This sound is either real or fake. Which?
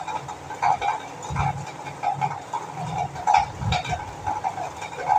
real